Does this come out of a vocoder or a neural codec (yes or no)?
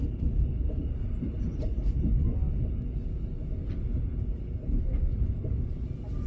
no